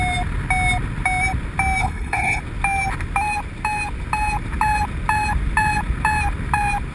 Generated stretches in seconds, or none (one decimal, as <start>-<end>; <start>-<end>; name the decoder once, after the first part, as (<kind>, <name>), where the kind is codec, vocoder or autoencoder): 1.8-2.4 (codec, HILCodec)